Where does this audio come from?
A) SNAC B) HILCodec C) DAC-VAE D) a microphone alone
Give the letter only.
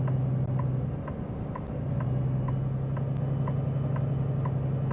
D